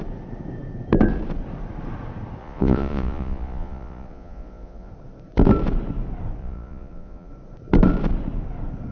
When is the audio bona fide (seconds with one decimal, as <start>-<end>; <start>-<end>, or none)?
0.0-2.4; 4.9-6.4; 7.3-8.9